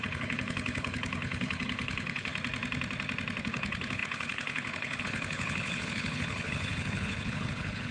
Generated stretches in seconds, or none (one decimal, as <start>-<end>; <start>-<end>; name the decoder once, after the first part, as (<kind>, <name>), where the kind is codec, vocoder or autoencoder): 0.0-2.3 (codec, HILCodec); 3.4-7.9